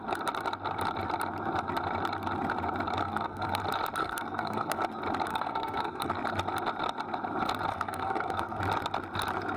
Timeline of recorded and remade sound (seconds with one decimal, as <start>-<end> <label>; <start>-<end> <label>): 0.0-3.0 recorded; 3.0-3.6 remade; 3.6-4.0 recorded; 4.0-4.8 remade; 4.8-5.3 recorded; 5.3-6.1 remade; 6.1-7.7 recorded; 7.7-8.6 remade; 8.6-9.6 recorded